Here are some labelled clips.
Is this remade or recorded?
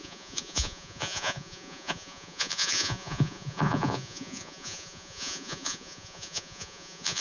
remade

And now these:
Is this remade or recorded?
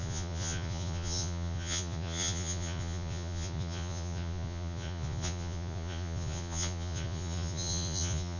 remade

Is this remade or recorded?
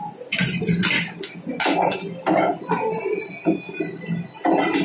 recorded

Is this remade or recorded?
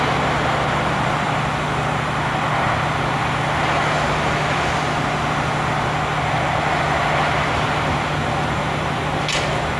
recorded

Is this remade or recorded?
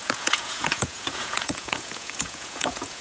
remade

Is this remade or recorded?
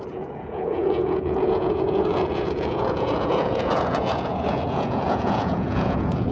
remade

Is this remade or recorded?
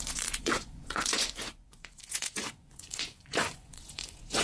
remade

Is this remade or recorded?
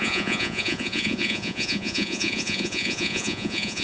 remade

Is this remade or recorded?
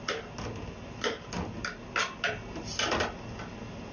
recorded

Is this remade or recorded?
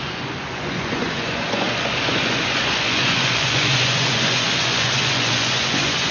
remade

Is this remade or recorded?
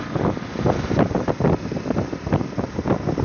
recorded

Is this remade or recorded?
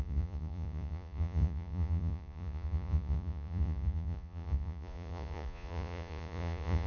remade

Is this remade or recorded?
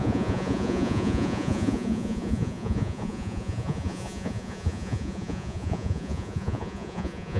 remade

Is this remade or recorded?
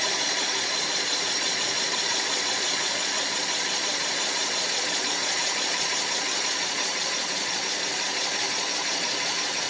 remade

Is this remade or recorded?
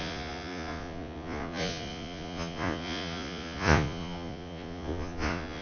remade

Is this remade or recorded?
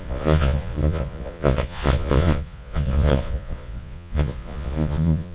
remade